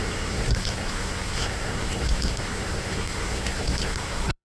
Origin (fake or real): fake